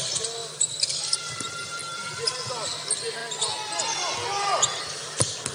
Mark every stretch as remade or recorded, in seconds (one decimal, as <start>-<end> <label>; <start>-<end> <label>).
0.0-0.4 recorded; 0.4-1.0 remade; 1.0-1.8 recorded; 1.8-2.5 remade; 2.5-5.5 recorded